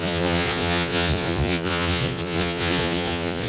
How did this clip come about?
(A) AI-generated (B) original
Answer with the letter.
A